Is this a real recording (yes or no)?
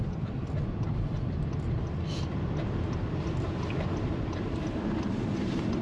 no